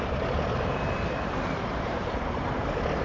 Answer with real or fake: fake